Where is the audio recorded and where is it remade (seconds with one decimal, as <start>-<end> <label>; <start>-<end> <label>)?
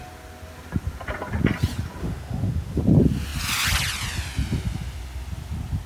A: 0.0-2.0 recorded; 2.0-2.8 remade; 2.8-5.9 recorded